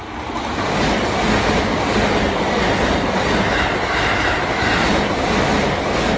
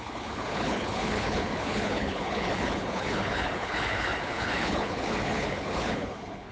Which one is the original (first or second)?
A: first